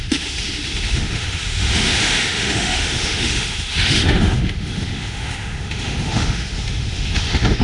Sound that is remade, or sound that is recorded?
remade